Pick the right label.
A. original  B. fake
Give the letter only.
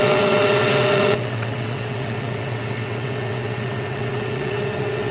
B